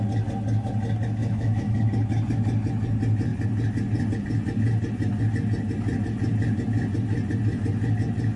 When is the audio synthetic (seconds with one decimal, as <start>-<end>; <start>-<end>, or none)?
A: 1.2-1.8